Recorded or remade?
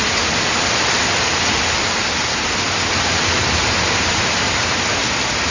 recorded